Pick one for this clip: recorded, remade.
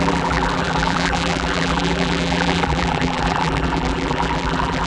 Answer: remade